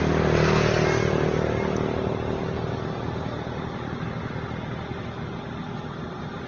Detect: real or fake real